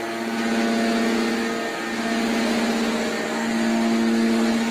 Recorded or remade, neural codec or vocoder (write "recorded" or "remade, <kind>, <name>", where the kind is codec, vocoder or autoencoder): recorded